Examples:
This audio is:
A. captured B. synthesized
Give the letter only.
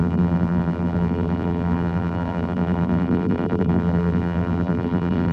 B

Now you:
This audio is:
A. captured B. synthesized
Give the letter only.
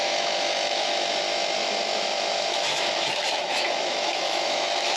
B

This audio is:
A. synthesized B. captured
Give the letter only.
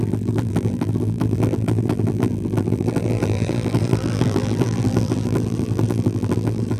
A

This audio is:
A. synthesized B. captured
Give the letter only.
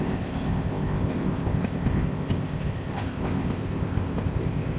A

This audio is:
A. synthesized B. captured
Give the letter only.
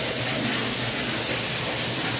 B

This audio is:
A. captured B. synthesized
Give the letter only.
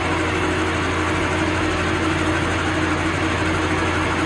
A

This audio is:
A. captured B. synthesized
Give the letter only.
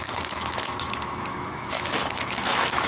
B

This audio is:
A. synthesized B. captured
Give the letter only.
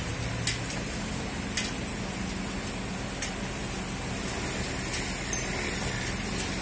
B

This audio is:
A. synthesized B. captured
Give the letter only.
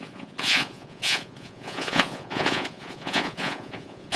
A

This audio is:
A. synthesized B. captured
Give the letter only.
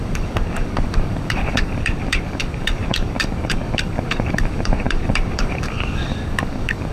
A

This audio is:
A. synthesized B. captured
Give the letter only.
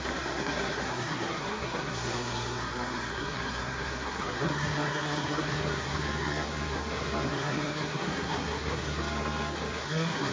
A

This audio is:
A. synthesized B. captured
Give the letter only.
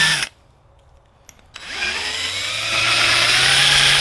B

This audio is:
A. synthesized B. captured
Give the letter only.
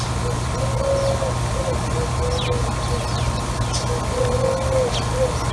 B